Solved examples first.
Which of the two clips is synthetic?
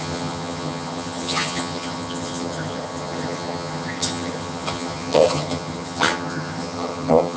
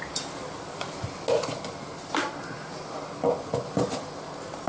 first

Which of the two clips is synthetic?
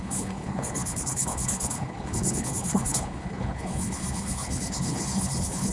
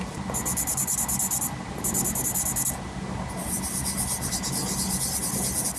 first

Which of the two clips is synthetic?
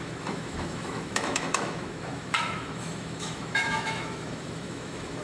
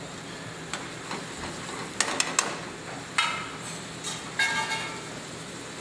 first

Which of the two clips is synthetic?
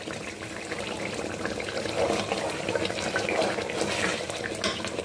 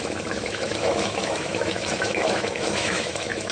second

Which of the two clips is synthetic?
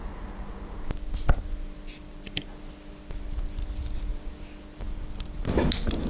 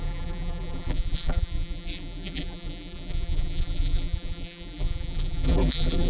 second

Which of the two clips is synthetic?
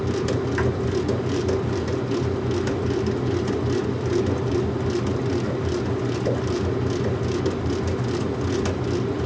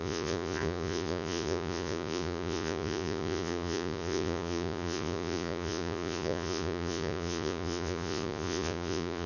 second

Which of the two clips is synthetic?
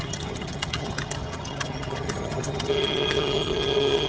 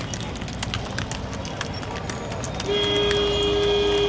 first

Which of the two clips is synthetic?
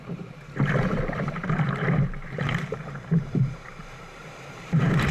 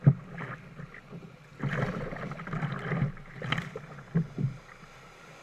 first